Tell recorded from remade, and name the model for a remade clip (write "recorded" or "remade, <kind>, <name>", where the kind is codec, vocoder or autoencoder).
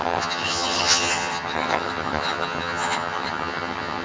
remade, vocoder, HiFi-GAN